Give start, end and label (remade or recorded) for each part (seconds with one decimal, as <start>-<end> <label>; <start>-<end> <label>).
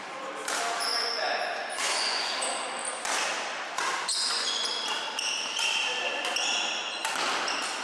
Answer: 0.0-0.9 recorded; 0.9-2.3 remade; 2.3-4.1 recorded; 4.1-4.7 remade; 4.7-7.8 recorded